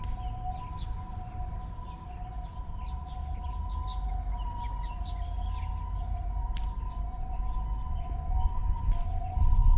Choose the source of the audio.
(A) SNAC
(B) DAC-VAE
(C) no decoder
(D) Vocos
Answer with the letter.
C